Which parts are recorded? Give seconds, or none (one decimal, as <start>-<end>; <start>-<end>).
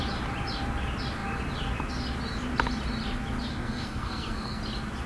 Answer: 0.0-3.5; 4.6-5.1